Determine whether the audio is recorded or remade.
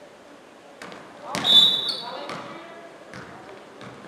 recorded